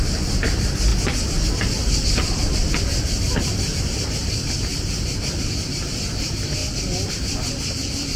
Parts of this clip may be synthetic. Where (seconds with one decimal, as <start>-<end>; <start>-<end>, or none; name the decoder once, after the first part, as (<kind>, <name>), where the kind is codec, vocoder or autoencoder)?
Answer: none